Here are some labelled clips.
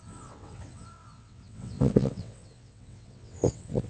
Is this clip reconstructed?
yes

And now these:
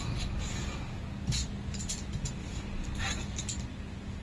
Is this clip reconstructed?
no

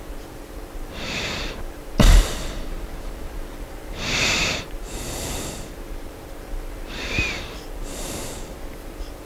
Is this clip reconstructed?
yes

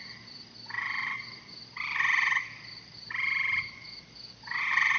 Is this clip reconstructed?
no